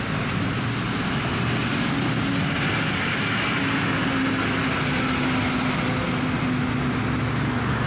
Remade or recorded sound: recorded